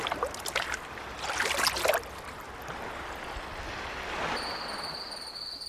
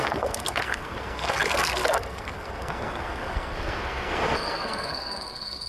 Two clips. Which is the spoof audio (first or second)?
second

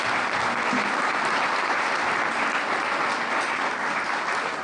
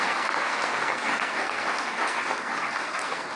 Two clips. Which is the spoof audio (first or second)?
second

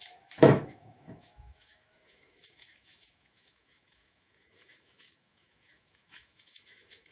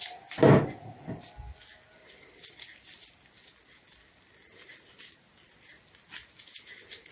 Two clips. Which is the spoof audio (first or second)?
first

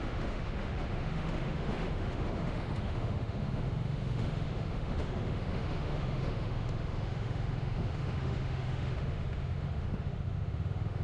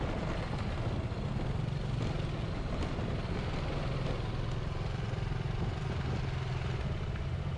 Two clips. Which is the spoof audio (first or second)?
first